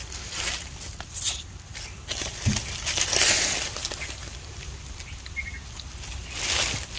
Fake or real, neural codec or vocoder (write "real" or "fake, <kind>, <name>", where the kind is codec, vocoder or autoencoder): real